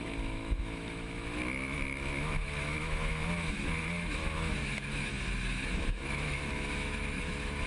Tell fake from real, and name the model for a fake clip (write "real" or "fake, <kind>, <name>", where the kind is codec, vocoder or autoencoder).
fake, autoencoder, DAC-VAE